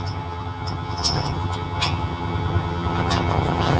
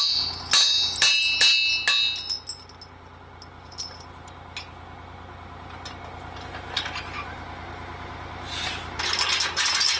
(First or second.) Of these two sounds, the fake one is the first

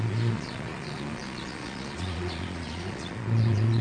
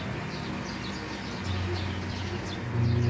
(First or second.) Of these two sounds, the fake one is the first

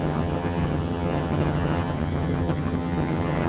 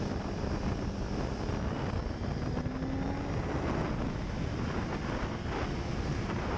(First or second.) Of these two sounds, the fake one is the first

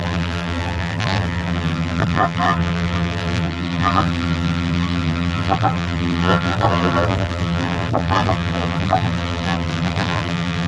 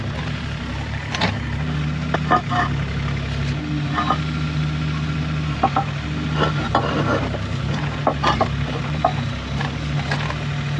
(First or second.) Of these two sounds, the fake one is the first